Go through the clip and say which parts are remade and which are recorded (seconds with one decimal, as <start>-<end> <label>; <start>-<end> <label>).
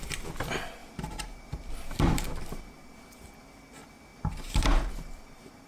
0.0-0.8 recorded; 0.8-2.6 remade; 2.6-4.1 recorded; 4.1-5.2 remade; 5.2-5.7 recorded